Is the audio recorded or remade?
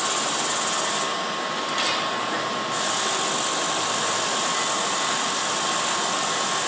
recorded